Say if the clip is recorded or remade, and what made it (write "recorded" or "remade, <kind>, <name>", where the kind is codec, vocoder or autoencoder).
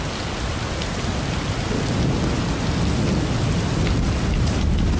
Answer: recorded